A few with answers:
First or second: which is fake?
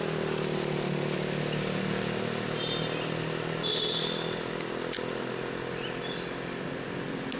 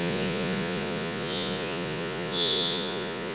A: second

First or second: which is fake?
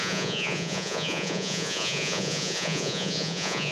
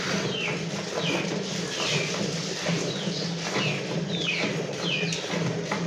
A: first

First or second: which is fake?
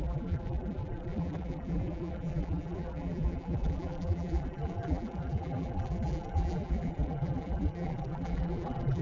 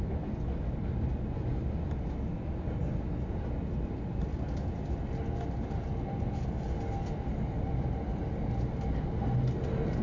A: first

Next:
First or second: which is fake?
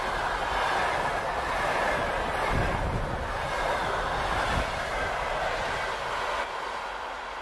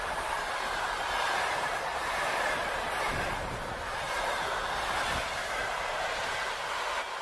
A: second